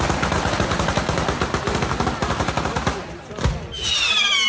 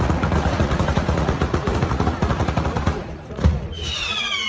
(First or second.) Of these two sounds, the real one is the first